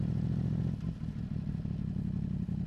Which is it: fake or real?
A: real